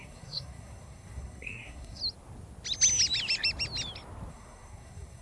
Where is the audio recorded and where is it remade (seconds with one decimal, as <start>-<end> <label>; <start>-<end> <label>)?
0.0-2.0 remade; 2.0-4.3 recorded; 4.3-5.2 remade

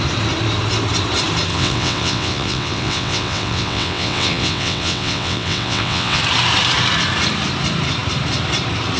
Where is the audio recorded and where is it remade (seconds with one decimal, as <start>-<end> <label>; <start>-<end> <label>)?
0.0-1.5 recorded; 1.5-6.2 remade; 6.2-9.0 recorded

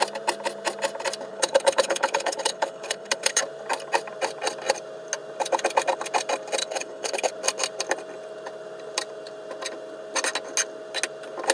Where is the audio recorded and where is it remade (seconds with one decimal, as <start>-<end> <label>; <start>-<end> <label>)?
0.0-1.3 recorded; 1.3-3.4 remade; 3.4-6.6 recorded; 6.6-7.3 remade; 7.3-11.5 recorded

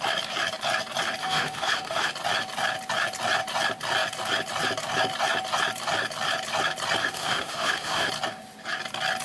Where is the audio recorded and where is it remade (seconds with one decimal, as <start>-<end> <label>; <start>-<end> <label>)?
0.0-1.2 recorded; 1.2-2.1 remade; 2.1-7.0 recorded; 7.0-8.1 remade; 8.1-9.2 recorded

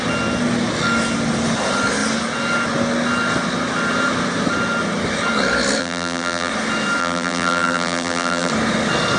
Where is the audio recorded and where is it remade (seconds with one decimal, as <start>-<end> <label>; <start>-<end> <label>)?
0.0-5.8 recorded; 5.8-6.5 remade; 6.5-7.0 recorded; 7.0-8.5 remade; 8.5-9.2 recorded